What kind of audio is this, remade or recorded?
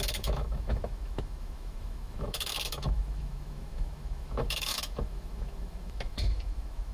remade